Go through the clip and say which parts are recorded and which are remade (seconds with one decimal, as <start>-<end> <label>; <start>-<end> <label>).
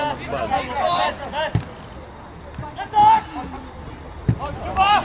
0.0-5.0 recorded